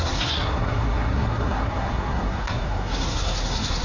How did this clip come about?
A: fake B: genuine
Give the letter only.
A